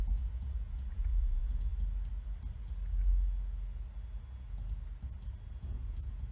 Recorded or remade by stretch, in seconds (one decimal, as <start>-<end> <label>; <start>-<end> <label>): 0.0-1.7 remade; 1.7-5.5 recorded; 5.5-6.3 remade